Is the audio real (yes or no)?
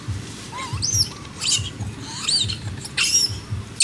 yes